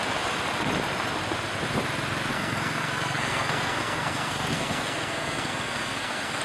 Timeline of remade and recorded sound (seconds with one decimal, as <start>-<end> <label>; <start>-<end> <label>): 0.0-2.3 recorded; 2.3-6.4 remade